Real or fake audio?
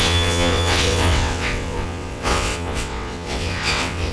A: fake